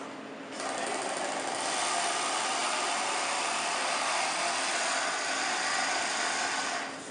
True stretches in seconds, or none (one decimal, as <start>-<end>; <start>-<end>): 0.0-7.1